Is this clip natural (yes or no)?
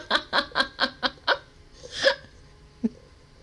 yes